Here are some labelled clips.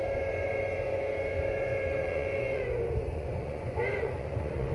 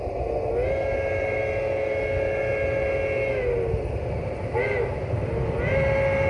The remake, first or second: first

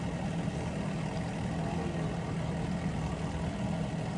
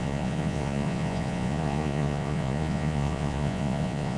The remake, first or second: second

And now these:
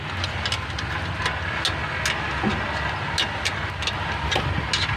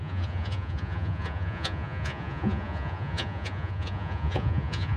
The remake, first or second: second